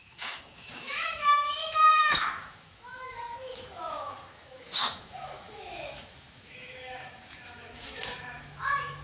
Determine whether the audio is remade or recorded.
remade